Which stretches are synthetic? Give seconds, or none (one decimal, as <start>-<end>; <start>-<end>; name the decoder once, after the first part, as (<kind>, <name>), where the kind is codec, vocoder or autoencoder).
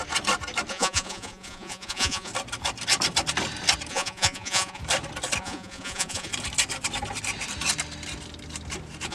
0.7-2.3 (vocoder, Vocos); 3.9-4.8; 5.4-6.3